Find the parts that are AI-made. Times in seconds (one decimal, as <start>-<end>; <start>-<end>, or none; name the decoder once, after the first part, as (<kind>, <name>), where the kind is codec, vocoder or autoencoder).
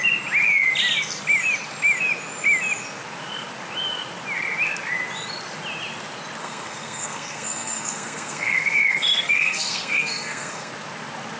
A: 6.4-10.7 (codec, SNAC)